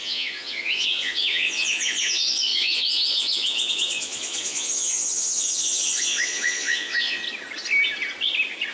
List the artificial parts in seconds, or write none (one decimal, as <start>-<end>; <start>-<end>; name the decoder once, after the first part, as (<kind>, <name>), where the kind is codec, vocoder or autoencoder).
0.0-7.2 (vocoder, Vocos)